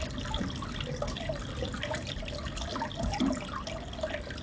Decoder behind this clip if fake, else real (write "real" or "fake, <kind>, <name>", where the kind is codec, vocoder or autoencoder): real